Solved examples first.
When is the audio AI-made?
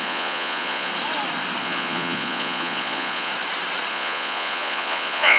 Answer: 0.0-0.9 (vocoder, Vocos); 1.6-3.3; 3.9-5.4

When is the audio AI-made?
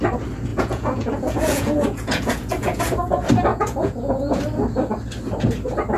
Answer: 0.5-2.8 (vocoder, Vocos); 3.5-4.4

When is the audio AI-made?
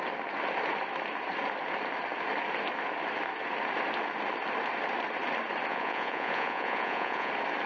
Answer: 5.7-7.3 (vocoder, Vocos)